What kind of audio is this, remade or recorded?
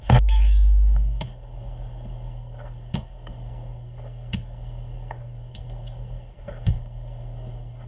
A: remade